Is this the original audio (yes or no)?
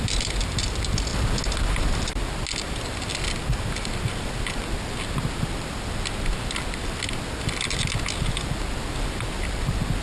yes